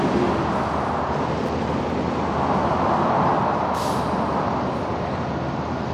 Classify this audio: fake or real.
real